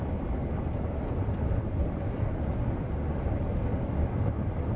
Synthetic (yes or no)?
no